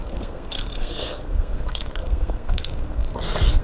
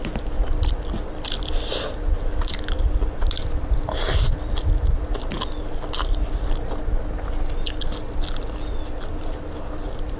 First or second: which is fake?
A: first